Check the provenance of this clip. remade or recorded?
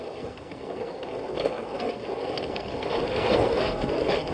remade